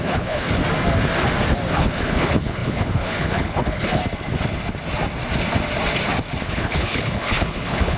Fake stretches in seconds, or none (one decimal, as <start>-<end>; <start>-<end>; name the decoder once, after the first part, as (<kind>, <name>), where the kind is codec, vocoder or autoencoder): 0.0-0.6 (codec, HILCodec); 1.7-4.0; 6.4-8.0